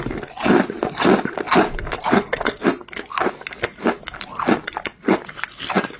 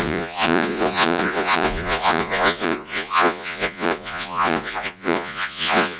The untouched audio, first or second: first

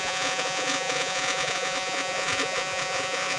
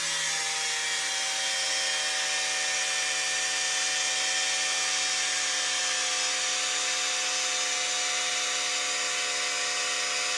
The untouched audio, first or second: second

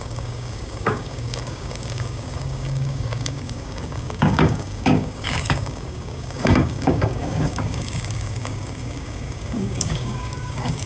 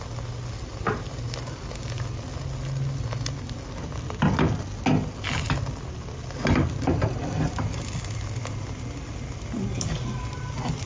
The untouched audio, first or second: second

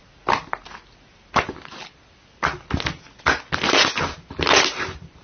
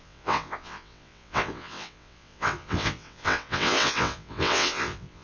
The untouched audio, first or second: first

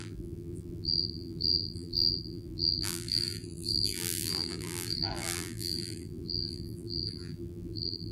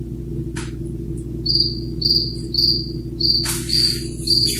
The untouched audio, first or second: second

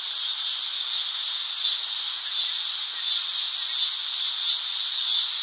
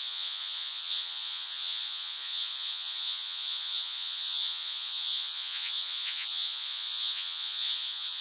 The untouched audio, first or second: first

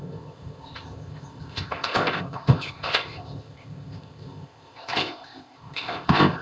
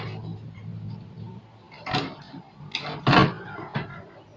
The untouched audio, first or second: second